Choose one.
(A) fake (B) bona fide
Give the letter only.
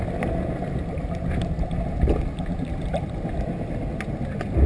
B